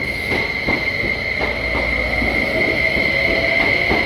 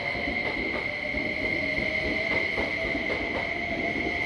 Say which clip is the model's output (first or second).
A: second